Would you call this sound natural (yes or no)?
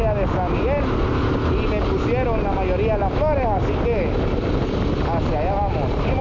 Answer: yes